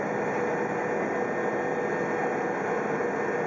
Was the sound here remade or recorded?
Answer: recorded